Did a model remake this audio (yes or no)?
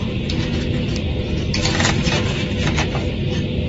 no